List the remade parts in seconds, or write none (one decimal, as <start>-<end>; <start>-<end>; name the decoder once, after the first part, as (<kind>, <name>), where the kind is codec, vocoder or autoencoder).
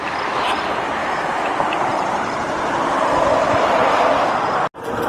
1.0-1.5 (autoencoder, DAC-VAE)